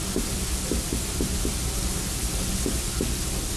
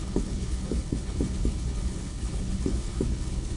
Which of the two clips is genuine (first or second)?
first